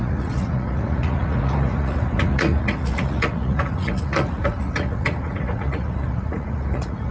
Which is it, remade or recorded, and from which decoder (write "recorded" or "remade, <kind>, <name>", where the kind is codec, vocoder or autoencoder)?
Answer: remade, vocoder, Vocos